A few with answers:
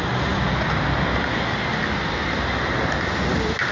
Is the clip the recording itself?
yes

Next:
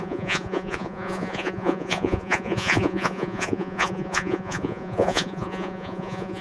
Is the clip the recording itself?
no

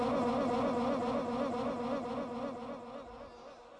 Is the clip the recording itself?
yes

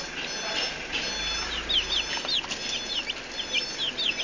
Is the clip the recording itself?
yes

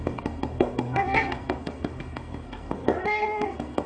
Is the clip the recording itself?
no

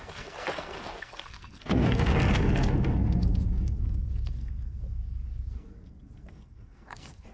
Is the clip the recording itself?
no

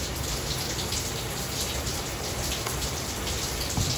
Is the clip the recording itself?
yes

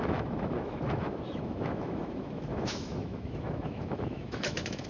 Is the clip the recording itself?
no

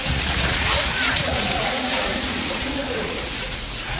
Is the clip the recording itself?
no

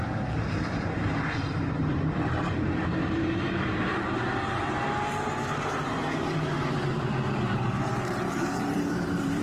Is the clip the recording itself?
no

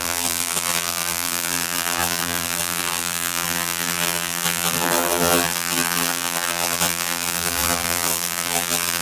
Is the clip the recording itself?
no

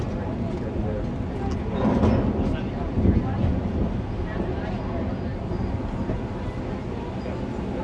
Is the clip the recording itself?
yes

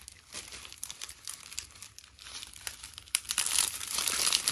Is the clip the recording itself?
no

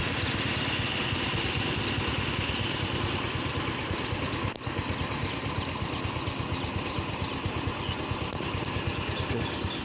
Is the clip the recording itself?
yes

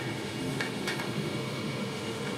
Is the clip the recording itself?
no